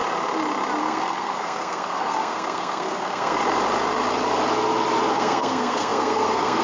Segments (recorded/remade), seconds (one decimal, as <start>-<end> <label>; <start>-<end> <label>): 0.0-0.8 recorded; 0.8-3.4 remade; 3.4-5.1 recorded; 5.1-6.6 remade